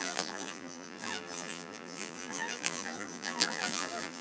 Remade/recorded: remade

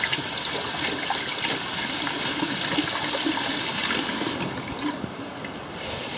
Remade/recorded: recorded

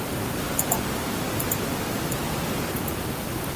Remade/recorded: remade